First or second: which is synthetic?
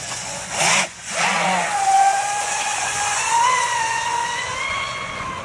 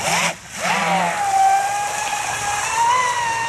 first